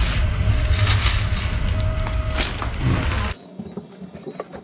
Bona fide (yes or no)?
yes